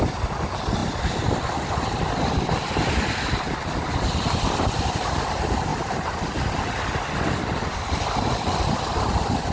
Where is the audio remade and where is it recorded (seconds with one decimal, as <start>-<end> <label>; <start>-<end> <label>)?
0.0-9.5 recorded